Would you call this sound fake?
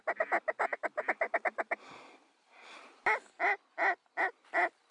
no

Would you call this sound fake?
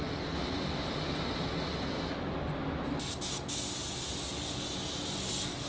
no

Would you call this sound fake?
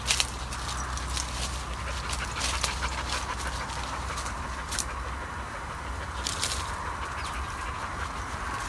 no